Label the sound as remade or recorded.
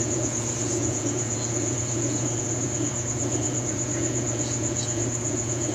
remade